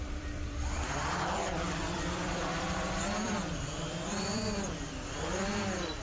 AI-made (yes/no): yes